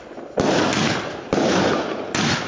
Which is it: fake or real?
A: real